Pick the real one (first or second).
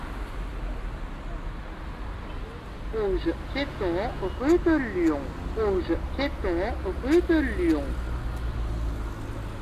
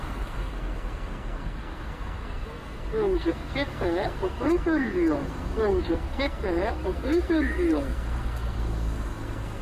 first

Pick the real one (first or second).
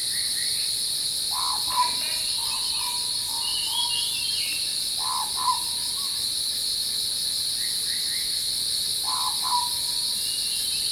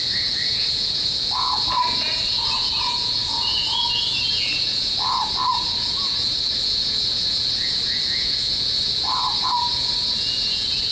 first